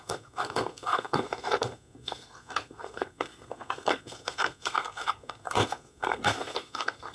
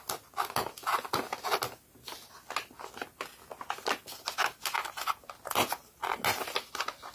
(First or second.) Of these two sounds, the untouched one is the second